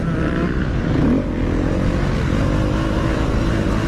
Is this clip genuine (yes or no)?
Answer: yes